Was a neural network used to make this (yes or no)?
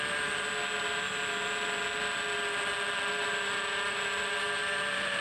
no